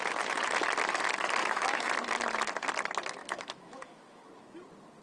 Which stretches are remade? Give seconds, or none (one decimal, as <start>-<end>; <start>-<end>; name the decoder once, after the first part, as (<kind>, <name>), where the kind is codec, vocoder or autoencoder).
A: 1.4-1.9 (autoencoder, DAC-VAE); 3.2-4.2